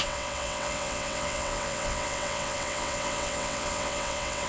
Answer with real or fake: fake